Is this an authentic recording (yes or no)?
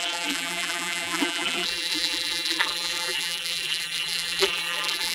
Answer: no